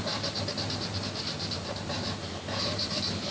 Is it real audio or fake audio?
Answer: real